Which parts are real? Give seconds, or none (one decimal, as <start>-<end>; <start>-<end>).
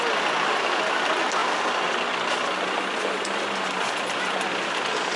0.0-5.2